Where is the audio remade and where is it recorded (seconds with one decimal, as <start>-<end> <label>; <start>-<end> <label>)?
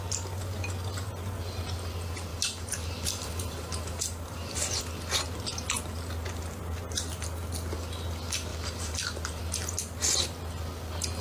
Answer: 0.0-2.3 recorded; 2.3-4.8 remade; 4.8-8.5 recorded; 8.5-9.4 remade; 9.4-11.2 recorded